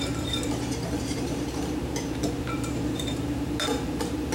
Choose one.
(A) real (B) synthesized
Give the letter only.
B